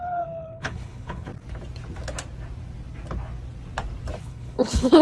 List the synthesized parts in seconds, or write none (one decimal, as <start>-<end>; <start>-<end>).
0.0-1.3; 4.2-5.0